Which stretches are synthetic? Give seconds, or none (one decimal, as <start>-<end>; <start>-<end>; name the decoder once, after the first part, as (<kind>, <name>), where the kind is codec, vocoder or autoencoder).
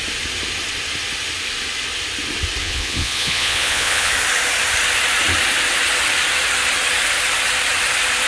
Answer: 2.6-4.1 (vocoder, Vocos)